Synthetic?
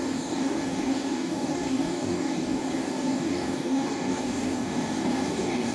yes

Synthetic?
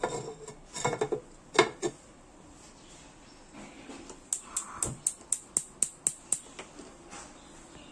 no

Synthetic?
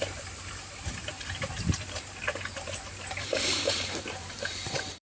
yes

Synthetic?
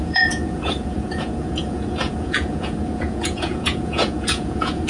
yes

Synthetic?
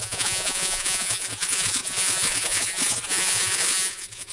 yes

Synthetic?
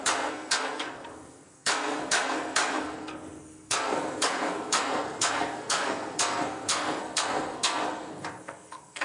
yes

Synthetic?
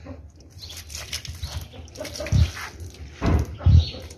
no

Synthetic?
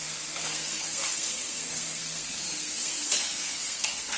yes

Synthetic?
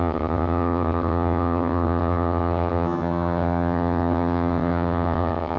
yes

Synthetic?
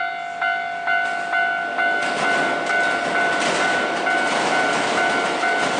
no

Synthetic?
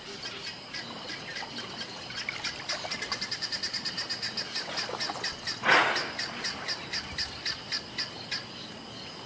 no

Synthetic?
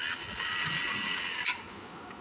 no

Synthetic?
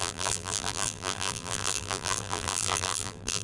yes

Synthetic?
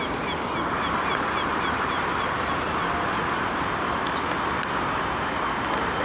no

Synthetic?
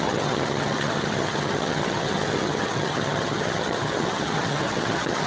yes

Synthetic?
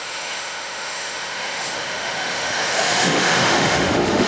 yes